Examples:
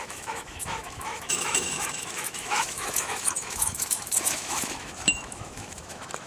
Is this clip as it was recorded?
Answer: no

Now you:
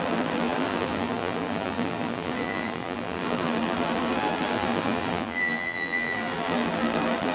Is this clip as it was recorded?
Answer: no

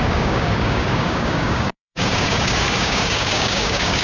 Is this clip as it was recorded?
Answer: no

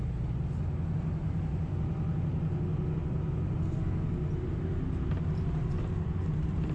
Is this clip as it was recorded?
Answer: yes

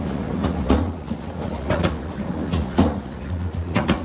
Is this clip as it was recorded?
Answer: no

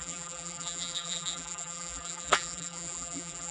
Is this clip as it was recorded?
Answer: no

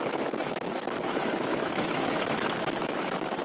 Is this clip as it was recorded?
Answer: no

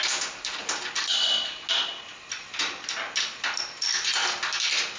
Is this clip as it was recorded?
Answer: yes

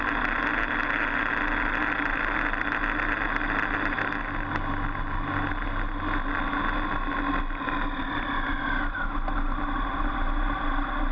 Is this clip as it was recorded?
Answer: yes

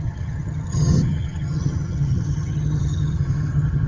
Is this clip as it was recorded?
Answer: no